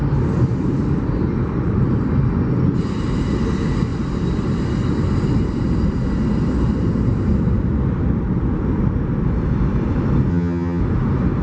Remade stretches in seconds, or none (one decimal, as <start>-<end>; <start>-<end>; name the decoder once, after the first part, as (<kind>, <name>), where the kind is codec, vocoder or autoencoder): 10.3-10.8 (vocoder, HiFi-GAN)